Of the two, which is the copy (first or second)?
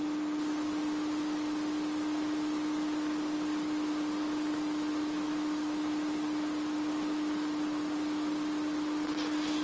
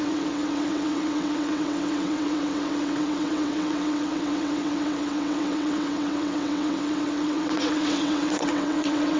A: second